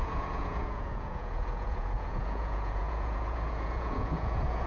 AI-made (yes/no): yes